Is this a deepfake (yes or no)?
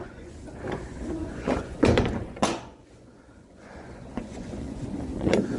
yes